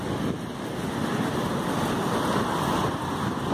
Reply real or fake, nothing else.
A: real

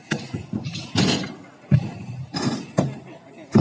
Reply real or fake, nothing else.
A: real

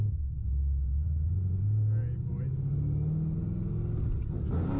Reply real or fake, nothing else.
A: real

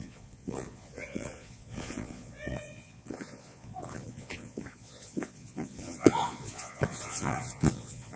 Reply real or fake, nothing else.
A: fake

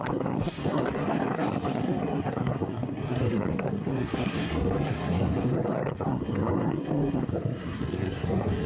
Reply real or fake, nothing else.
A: fake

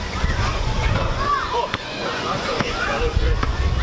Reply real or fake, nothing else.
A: fake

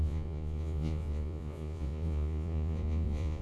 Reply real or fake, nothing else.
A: fake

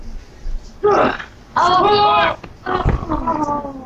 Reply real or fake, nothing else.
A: real